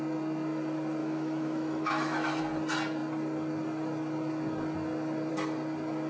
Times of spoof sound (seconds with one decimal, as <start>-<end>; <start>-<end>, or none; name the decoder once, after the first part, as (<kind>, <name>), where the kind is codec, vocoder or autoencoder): 1.0-2.4 (autoencoder, DAC-VAE)